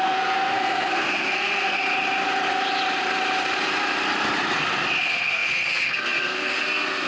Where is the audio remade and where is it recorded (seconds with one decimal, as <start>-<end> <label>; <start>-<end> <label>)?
0.0-1.8 remade; 1.8-5.0 recorded; 5.0-7.1 remade